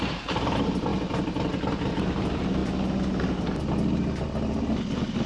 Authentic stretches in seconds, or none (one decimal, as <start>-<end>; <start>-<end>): 0.9-1.9; 2.6-5.3